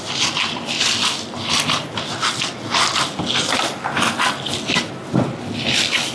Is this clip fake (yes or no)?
no